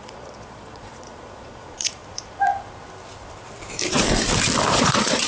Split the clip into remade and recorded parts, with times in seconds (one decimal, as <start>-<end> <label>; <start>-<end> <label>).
0.0-2.0 remade; 2.0-4.7 recorded; 4.7-5.3 remade